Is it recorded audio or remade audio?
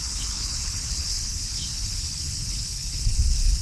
remade